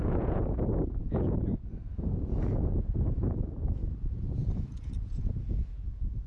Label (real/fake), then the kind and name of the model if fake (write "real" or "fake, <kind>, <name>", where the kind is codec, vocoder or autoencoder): fake, vocoder, Vocos